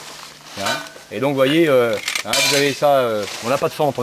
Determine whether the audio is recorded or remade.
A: recorded